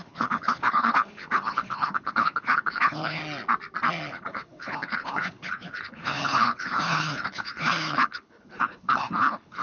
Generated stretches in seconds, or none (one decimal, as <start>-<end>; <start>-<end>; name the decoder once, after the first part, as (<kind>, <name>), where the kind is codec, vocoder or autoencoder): 0.0-3.2 (codec, HILCodec); 4.1-9.6